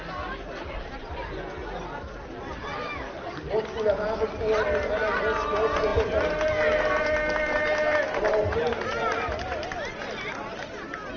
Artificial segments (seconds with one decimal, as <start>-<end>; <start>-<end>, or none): none